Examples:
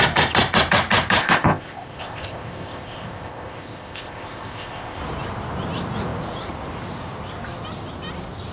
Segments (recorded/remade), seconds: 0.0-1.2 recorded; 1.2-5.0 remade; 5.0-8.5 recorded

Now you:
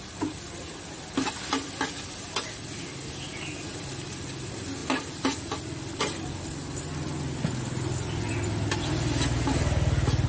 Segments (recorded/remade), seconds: 0.0-4.8 recorded; 4.8-5.7 remade; 5.7-10.3 recorded

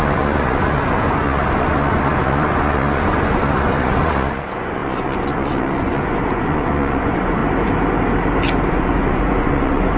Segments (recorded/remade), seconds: 0.0-7.4 remade; 7.4-8.7 recorded; 8.7-10.0 remade

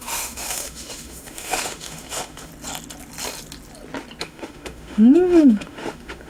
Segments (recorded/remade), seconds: 0.0-2.5 remade; 2.5-4.2 recorded; 4.2-6.3 remade

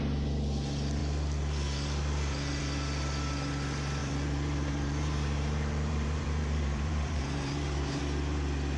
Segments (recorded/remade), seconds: 0.0-4.0 recorded; 4.0-8.0 remade; 8.0-8.8 recorded

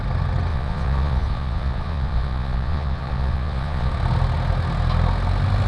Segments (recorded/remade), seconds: 0.0-0.5 recorded; 0.5-3.9 remade; 3.9-5.7 recorded